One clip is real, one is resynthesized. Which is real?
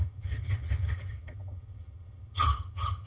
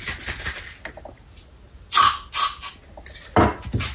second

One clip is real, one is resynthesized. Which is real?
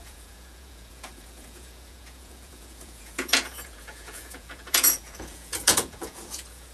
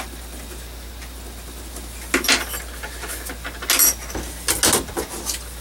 second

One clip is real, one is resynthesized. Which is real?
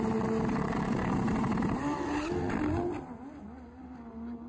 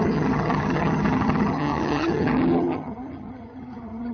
first